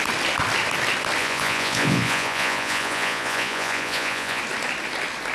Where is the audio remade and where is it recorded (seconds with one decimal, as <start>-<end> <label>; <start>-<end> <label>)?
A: 0.0-1.2 recorded; 1.2-4.4 remade; 4.4-5.3 recorded